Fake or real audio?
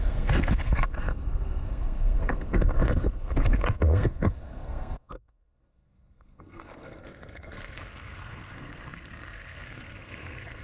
fake